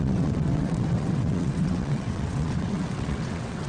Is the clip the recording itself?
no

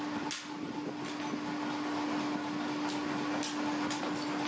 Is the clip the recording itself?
yes